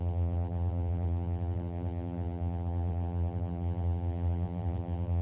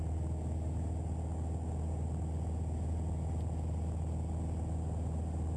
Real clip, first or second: second